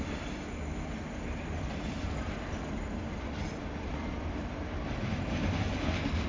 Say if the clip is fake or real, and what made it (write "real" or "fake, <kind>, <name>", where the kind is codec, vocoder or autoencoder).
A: real